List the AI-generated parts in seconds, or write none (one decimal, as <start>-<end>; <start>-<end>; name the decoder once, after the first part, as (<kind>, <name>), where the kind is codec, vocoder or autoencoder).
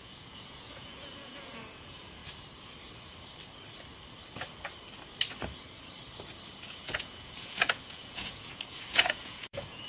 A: 0.0-2.2 (vocoder, Vocos); 6.5-9.9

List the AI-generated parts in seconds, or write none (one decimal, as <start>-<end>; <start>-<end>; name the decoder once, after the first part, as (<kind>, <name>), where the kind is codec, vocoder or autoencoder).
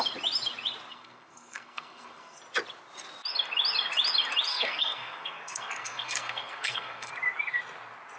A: 0.9-2.4 (codec, SNAC); 4.5-7.1